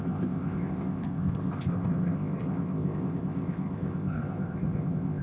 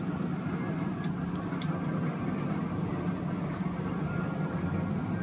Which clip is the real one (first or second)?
second